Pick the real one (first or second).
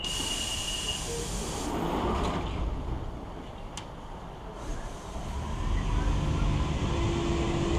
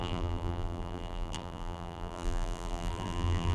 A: first